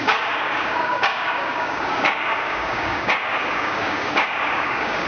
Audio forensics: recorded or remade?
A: remade